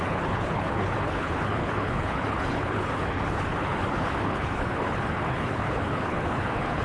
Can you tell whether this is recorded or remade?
remade